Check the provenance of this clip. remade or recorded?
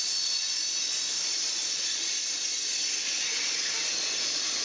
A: recorded